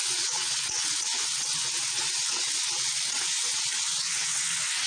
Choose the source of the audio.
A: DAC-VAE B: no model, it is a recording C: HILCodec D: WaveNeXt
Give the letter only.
D